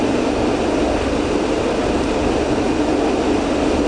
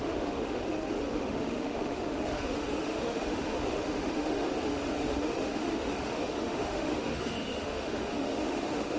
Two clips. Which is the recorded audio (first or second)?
first